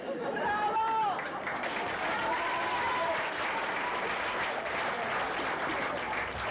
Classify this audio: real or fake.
real